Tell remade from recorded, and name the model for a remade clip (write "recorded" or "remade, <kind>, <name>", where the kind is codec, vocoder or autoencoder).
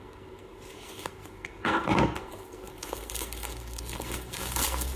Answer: remade, codec, SNAC